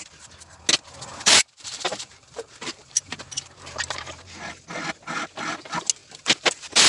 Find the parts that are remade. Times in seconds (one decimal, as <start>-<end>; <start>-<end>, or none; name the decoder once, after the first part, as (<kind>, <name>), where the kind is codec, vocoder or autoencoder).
1.1-4.4 (vocoder, BigVGAN v2)